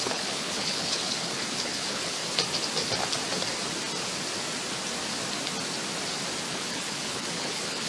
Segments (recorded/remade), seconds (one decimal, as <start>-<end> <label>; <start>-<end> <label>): 0.0-2.2 remade; 2.2-6.5 recorded; 6.5-7.9 remade